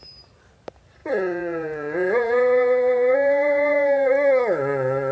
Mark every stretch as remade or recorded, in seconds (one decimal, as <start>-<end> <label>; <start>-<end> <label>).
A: 0.0-1.0 recorded; 1.0-4.1 remade; 4.1-5.1 recorded

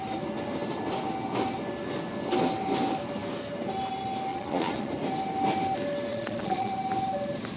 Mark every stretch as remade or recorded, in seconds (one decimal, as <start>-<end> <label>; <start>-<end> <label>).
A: 0.0-4.3 recorded; 4.3-4.9 remade; 4.9-6.1 recorded; 6.1-6.7 remade; 6.7-7.6 recorded

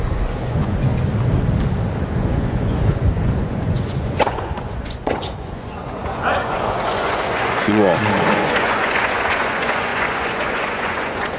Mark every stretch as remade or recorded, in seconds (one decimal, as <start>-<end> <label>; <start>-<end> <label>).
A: 0.0-0.9 remade; 0.9-2.1 recorded; 2.1-11.4 remade

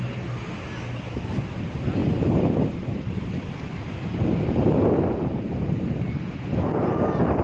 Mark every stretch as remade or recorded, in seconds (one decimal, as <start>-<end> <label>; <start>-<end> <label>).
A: 0.0-7.4 recorded

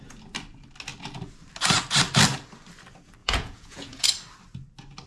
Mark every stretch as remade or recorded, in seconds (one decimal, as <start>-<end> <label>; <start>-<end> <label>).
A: 0.0-3.2 recorded; 3.2-4.1 remade; 4.1-5.1 recorded

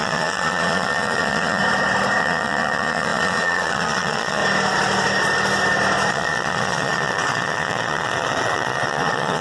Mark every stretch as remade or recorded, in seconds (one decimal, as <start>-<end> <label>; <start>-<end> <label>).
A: 0.0-1.6 remade; 1.6-2.2 recorded; 2.2-4.4 remade; 4.4-6.1 recorded; 6.1-9.4 remade

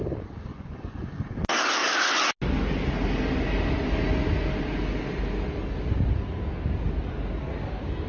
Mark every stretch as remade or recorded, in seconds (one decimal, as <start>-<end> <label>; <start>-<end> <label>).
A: 0.0-0.5 recorded; 0.5-1.3 remade; 1.3-8.1 recorded

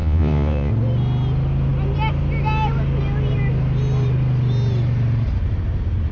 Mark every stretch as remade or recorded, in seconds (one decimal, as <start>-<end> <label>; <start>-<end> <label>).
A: 0.0-0.7 remade; 0.7-6.1 recorded